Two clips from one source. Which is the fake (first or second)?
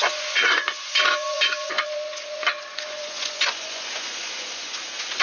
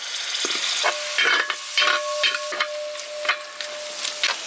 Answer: first